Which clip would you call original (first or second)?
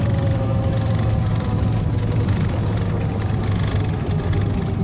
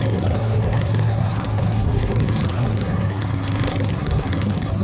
first